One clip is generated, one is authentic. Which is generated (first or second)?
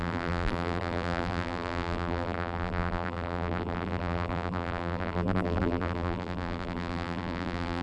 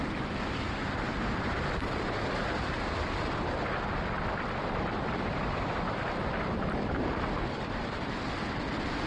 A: first